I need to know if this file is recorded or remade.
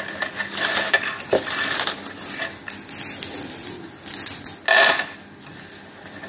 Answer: recorded